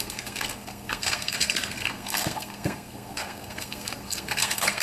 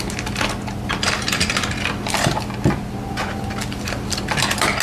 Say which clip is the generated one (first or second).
first